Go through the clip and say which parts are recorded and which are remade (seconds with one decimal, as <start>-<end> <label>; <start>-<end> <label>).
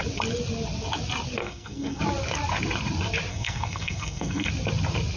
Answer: 0.0-1.4 recorded; 1.4-2.0 remade; 2.0-3.3 recorded; 3.3-4.5 remade; 4.5-5.2 recorded